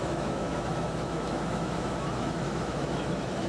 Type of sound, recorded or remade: remade